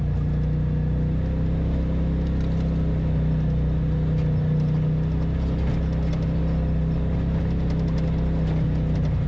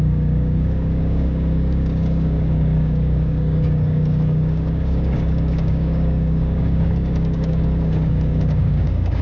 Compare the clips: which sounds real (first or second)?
first